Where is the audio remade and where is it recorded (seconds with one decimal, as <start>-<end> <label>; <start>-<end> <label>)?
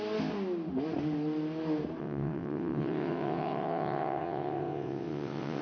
0.0-2.0 recorded; 2.0-5.6 remade